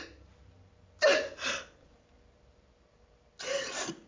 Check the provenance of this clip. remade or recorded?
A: recorded